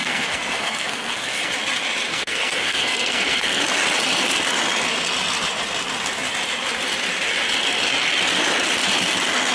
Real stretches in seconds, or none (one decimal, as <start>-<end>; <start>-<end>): 1.5-2.1; 3.6-9.5